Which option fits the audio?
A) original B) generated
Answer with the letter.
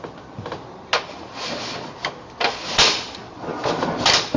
A